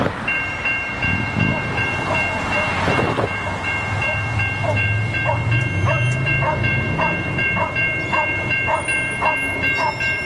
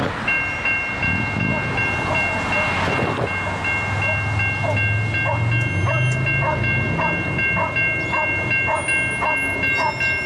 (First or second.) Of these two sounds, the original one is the second